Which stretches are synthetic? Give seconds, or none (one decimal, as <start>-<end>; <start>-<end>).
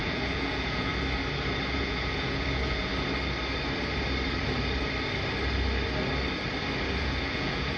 0.0-0.9; 1.7-2.9; 7.0-7.8